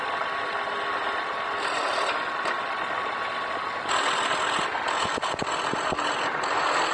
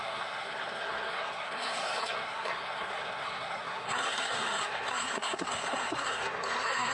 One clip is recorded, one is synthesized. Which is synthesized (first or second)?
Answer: second